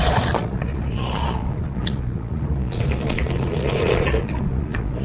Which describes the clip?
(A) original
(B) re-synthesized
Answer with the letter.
B